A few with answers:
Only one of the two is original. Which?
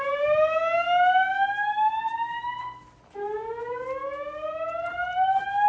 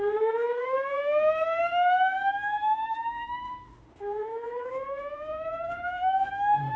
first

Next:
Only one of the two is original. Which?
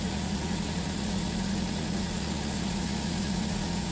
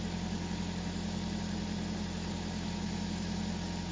second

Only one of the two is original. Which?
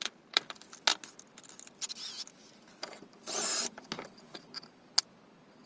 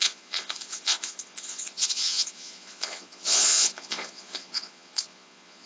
first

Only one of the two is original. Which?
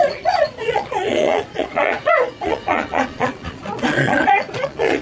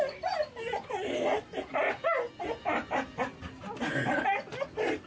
second